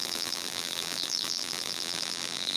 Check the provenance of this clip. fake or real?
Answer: fake